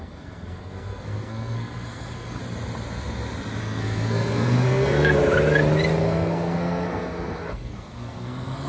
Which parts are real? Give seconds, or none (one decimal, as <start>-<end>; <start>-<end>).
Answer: 2.4-3.6; 5.2-6.0